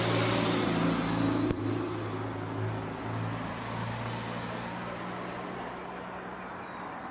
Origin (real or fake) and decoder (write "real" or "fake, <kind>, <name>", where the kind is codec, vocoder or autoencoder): real